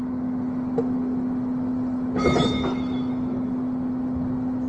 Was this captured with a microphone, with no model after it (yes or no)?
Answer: no